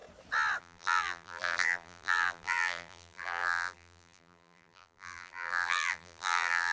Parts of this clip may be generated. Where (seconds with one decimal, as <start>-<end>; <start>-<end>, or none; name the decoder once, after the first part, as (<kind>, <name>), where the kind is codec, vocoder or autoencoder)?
0.6-6.7 (vocoder, BigVGAN v2)